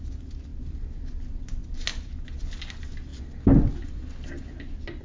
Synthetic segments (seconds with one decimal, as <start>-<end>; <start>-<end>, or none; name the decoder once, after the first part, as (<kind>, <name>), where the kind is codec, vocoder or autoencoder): none